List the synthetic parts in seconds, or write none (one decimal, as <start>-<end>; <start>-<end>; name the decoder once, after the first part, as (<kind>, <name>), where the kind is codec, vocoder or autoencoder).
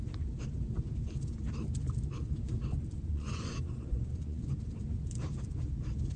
3.1-4.4 (vocoder, Vocos)